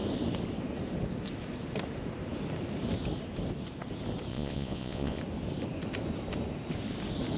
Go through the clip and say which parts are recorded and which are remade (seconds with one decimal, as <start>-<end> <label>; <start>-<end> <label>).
0.0-4.3 recorded; 4.3-5.2 remade; 5.2-7.4 recorded